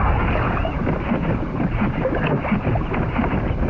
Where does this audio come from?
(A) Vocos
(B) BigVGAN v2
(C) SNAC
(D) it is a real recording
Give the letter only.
D